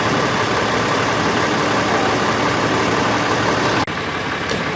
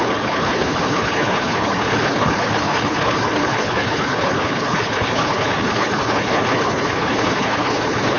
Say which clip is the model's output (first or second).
second